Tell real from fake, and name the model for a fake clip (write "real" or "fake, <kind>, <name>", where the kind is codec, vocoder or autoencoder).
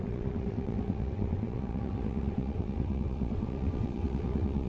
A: fake, vocoder, WaveNeXt